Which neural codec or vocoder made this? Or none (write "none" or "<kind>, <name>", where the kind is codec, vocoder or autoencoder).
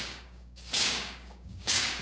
codec, DAC